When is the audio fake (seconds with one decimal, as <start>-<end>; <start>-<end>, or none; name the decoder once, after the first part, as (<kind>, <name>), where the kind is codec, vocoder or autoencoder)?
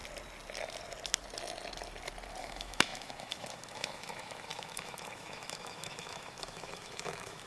2.4-7.5 (autoencoder, DAC-VAE)